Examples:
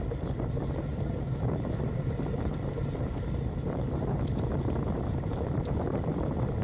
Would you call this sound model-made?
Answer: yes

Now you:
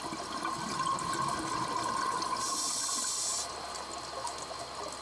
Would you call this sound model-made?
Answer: no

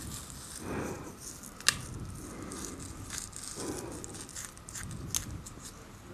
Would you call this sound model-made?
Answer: no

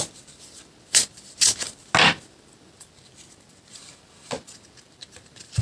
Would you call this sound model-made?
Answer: no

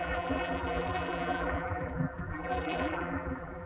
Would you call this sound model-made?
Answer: yes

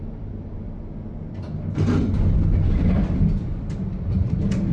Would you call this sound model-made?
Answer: yes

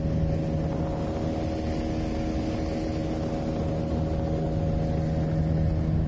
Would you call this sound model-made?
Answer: no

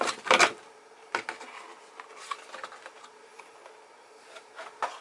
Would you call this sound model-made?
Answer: no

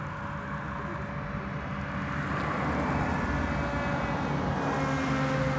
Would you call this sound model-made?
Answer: no